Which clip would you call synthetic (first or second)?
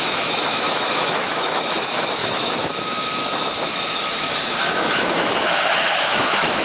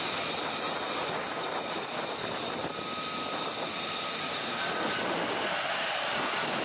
first